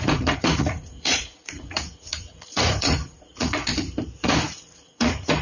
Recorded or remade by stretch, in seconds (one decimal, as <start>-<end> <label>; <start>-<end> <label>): 0.0-3.7 remade; 3.7-4.2 recorded; 4.2-5.4 remade